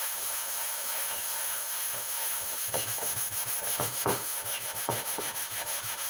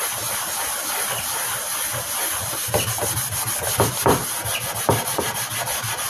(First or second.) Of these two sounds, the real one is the second